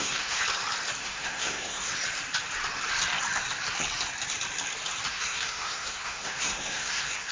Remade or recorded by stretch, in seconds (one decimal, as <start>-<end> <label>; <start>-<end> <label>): 0.0-0.4 remade; 0.4-1.0 recorded; 1.0-1.9 remade; 1.9-5.1 recorded; 5.1-7.3 remade